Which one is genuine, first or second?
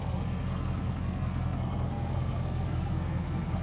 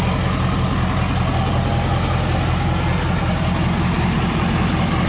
second